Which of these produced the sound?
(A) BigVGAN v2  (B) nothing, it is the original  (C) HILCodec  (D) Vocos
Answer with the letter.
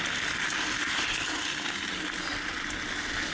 B